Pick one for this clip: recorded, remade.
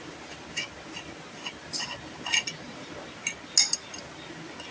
recorded